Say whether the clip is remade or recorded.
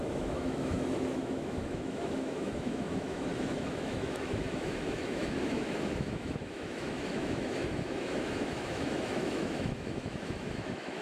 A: remade